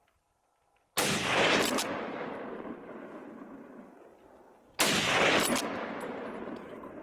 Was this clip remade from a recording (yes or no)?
no